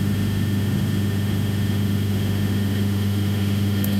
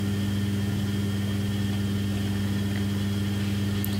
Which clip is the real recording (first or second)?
second